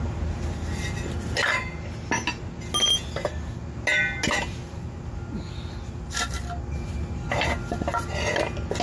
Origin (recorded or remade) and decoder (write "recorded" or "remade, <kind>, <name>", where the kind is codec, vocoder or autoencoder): recorded